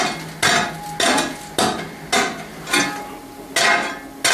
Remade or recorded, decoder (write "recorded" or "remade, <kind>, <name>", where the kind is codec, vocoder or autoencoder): recorded